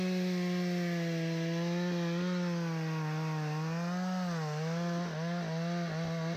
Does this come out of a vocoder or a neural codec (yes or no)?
no